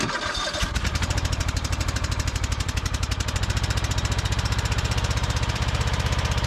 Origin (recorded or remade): remade